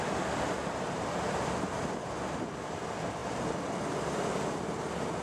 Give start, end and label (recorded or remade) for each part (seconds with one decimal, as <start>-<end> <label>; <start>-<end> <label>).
0.0-0.6 recorded; 0.6-1.8 remade; 1.8-3.2 recorded; 3.2-3.7 remade; 3.7-5.2 recorded